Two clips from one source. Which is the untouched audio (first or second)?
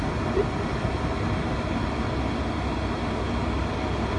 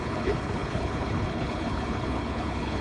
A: first